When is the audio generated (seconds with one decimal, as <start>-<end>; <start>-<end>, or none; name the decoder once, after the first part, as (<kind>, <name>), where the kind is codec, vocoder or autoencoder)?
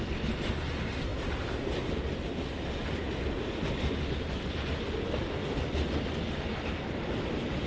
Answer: none